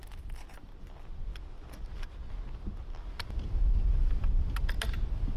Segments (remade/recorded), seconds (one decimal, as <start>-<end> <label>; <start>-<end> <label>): 0.0-5.4 recorded